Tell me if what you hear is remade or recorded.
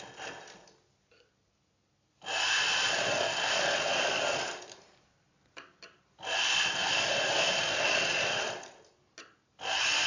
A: recorded